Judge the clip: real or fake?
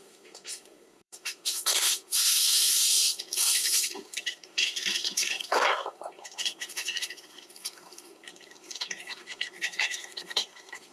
fake